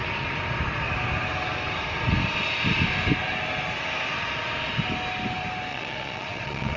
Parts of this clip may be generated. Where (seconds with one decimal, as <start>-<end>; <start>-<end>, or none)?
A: 5.7-6.8